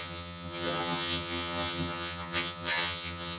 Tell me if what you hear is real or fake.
fake